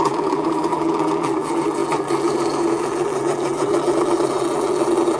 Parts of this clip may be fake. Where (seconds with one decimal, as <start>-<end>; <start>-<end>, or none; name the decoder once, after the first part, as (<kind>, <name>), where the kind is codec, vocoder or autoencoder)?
0.0-5.2 (vocoder, BigVGAN v2)

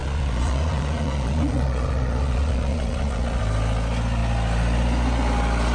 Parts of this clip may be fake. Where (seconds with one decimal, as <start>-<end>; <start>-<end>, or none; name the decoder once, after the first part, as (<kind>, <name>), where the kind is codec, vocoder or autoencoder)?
0.0-3.4 (vocoder, Vocos)

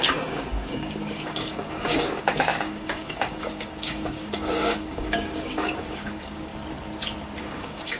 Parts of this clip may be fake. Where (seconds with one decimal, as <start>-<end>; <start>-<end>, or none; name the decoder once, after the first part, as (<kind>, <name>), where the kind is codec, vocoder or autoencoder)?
0.0-6.5 (codec, DAC); 7.4-8.0

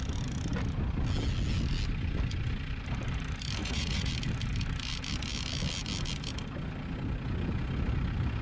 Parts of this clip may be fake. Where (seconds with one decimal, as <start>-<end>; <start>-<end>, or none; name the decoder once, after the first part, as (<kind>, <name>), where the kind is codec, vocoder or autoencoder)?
3.6-4.1 (vocoder, Vocos)

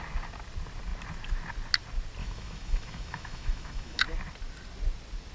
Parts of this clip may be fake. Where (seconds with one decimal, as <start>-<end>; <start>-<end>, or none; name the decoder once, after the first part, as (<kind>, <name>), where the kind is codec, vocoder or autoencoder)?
2.2-4.0 (autoencoder, DAC-VAE)

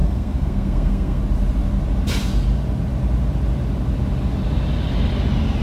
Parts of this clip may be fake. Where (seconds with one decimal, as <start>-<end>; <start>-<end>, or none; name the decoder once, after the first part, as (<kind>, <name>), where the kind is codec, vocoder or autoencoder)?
0.0-1.2 (codec, SNAC)

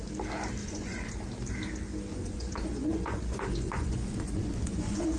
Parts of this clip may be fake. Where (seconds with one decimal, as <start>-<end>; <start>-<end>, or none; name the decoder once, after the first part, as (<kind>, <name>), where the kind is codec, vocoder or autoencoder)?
0.6-1.1 (vocoder, Vocos); 2.1-5.2

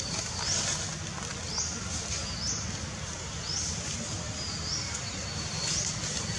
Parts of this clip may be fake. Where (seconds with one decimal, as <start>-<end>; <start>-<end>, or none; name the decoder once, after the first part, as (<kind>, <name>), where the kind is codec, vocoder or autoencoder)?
none